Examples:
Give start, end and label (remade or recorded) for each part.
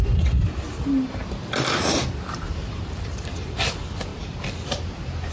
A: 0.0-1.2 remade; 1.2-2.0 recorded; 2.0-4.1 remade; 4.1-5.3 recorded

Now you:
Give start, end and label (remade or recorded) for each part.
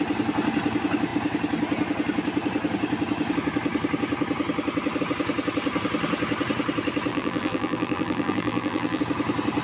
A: 0.0-7.1 recorded; 7.1-9.0 remade; 9.0-9.6 recorded